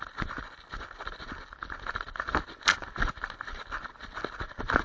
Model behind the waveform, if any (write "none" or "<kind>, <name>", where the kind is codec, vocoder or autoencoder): none